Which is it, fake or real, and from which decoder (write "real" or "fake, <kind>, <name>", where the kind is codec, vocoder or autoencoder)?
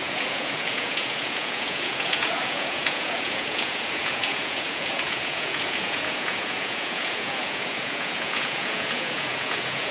fake, vocoder, Vocos